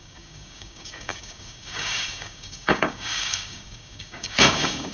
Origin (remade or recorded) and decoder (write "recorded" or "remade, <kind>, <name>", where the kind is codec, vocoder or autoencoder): remade, codec, DAC